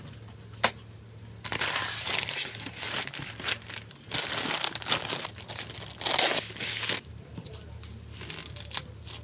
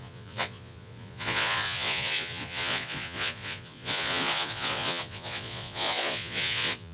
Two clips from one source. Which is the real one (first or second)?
first